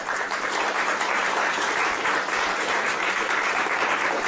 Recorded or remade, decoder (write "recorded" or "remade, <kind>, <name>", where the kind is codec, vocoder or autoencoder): remade, vocoder, BigVGAN v2